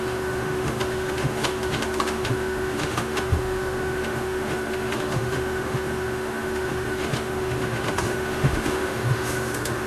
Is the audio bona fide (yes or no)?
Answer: no